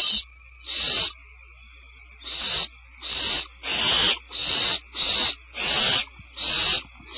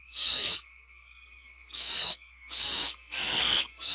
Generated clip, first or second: second